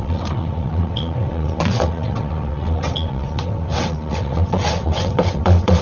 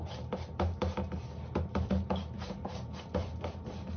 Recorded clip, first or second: second